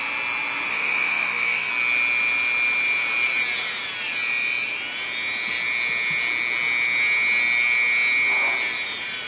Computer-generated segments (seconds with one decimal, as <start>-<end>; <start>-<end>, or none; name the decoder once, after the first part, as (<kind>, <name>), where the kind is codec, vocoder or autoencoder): 0.7-1.7 (autoencoder, DAC-VAE)